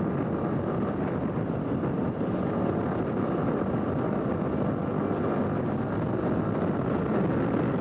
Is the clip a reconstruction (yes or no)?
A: no